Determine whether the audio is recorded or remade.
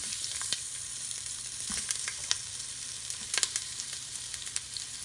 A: remade